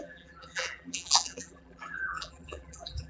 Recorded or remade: remade